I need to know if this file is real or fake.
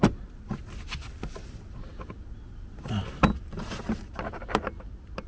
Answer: real